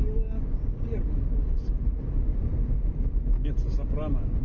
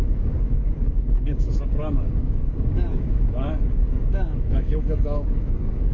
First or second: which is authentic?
first